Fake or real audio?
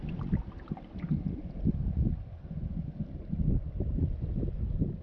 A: real